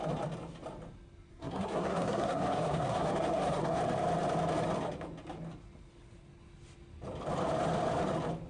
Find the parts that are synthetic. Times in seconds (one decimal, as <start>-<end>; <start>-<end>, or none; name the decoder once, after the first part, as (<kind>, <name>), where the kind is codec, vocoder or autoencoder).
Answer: 1.3-3.8 (codec, SNAC)